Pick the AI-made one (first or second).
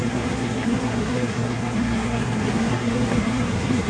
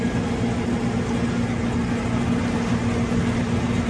first